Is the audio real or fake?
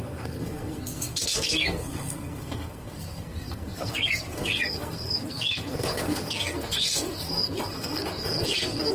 fake